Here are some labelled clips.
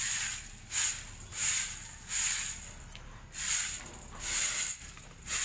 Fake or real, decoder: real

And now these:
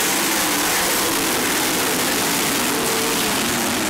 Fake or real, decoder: real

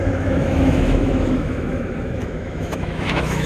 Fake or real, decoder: fake, autoencoder, DAC-VAE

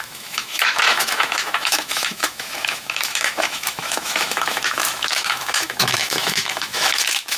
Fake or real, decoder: fake, autoencoder, DAC-VAE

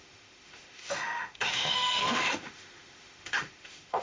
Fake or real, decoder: fake, autoencoder, DAC-VAE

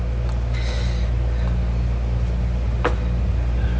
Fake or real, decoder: real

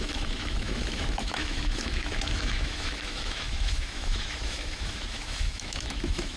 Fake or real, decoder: fake, autoencoder, DAC-VAE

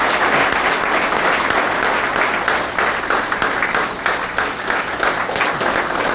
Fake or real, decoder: real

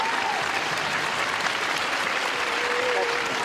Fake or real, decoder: real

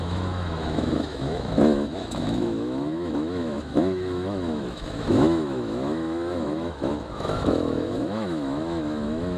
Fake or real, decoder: fake, autoencoder, DAC-VAE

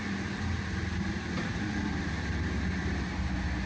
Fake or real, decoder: real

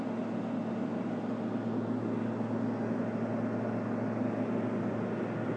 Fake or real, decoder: real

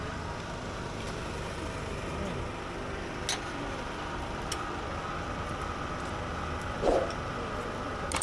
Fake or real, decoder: real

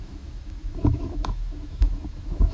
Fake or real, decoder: fake, autoencoder, DAC-VAE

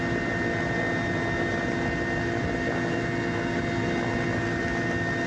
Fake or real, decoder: real